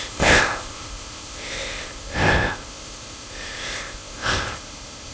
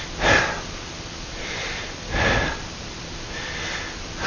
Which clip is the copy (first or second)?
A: first